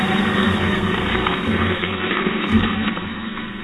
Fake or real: fake